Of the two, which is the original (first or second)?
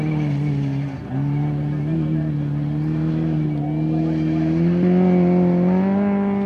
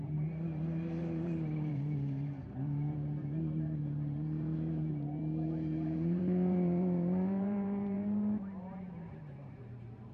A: first